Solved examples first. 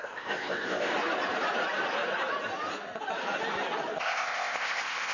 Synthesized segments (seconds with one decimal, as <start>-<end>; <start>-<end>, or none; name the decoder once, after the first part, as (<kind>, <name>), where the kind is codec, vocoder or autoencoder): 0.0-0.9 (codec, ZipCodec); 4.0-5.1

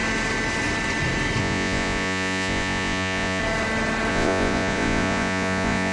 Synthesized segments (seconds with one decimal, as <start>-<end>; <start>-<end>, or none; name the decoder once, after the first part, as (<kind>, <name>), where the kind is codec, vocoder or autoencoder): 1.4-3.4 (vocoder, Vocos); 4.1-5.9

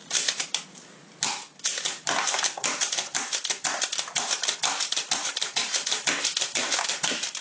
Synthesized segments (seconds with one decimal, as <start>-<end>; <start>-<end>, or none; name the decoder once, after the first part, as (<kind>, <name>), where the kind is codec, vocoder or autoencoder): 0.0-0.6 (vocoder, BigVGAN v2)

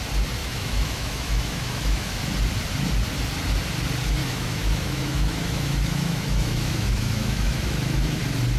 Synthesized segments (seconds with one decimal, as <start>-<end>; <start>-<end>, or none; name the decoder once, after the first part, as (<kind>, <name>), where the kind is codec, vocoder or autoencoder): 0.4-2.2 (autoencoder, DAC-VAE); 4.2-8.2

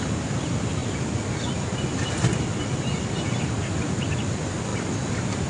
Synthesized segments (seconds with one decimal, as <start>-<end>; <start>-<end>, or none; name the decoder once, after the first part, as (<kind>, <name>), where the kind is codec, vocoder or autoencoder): 0.0-0.8 (vocoder, BigVGAN v2); 3.7-4.7